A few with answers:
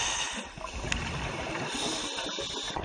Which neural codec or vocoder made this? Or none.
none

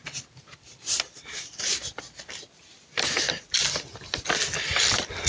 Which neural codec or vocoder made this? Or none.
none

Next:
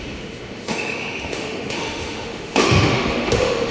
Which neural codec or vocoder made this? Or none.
autoencoder, DAC-VAE